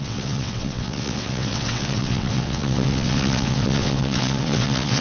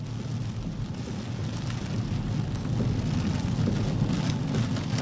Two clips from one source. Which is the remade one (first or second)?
first